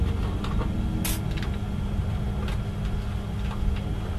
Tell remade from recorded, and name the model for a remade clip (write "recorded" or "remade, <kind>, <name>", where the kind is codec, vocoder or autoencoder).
recorded